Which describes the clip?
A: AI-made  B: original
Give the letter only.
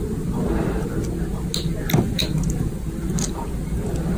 B